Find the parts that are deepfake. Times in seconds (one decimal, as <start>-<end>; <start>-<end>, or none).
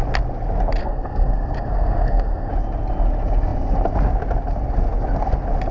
0.8-2.5